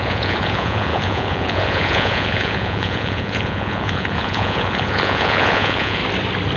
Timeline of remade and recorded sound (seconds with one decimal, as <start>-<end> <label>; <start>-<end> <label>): 0.0-6.0 remade; 6.0-6.6 recorded